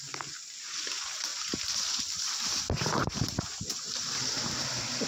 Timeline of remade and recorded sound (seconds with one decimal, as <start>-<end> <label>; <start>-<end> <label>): 0.0-5.1 recorded